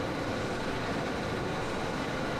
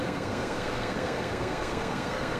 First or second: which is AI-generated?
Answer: second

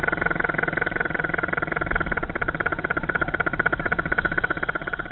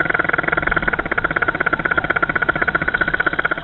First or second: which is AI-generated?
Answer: first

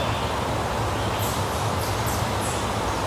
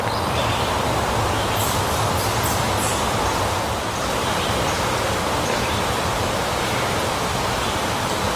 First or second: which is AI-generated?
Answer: second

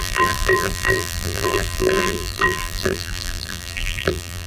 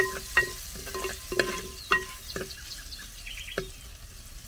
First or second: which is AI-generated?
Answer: first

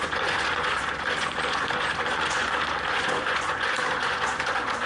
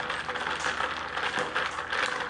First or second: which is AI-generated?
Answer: first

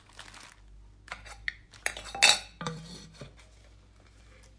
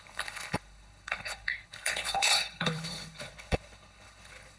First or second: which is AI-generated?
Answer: second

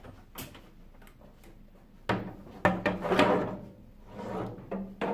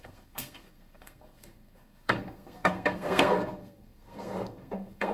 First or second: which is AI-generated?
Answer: second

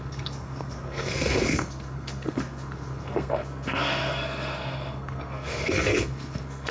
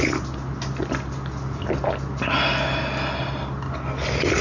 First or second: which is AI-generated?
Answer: first